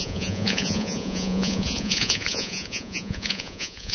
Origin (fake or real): fake